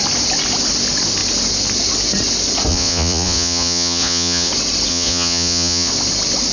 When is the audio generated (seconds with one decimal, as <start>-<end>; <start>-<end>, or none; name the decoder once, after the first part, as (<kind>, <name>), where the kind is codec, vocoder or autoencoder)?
2.7-4.5 (vocoder, Vocos); 4.9-5.9